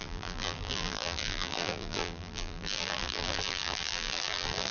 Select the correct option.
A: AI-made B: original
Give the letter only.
A